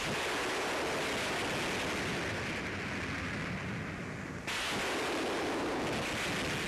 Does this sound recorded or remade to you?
recorded